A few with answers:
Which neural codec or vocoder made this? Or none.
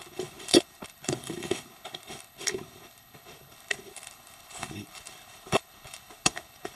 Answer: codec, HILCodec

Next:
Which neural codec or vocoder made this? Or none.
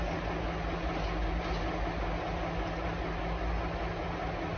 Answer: none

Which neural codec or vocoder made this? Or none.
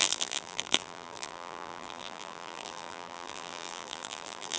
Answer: vocoder, BigVGAN v2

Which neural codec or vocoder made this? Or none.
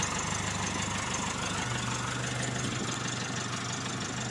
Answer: none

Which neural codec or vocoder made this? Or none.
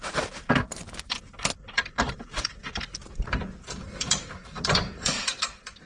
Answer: vocoder, BigVGAN v2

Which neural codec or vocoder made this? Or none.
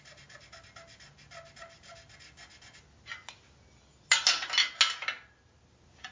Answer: none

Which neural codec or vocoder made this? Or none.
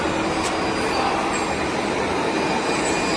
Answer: none